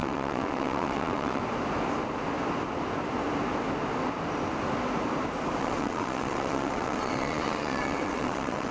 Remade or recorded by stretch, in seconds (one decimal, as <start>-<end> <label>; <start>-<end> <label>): 0.0-1.4 remade; 1.4-5.6 recorded; 5.6-8.7 remade